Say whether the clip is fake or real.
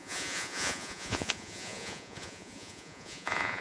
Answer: fake